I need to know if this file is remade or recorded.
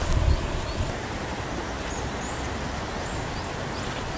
recorded